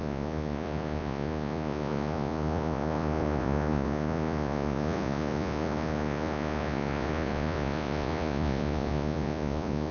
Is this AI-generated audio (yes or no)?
yes